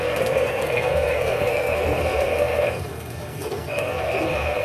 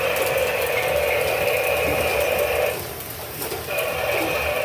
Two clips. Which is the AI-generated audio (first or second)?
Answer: first